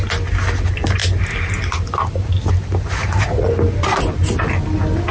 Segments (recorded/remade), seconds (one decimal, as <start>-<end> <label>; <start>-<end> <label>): 0.0-3.0 recorded; 3.0-3.5 remade; 3.5-5.1 recorded